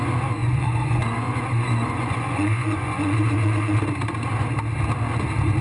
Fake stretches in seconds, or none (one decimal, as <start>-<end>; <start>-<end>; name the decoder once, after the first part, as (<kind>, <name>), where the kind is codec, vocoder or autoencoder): 0.4-3.8 (vocoder, Vocos)